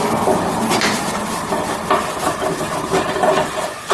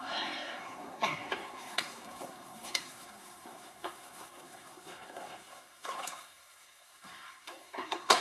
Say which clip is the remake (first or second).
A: second